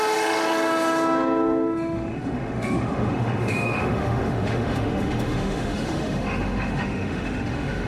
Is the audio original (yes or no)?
no